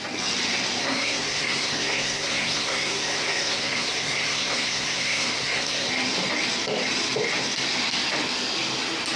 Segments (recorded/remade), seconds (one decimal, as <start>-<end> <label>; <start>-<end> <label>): 0.0-0.8 recorded; 0.8-5.9 remade; 5.9-9.2 recorded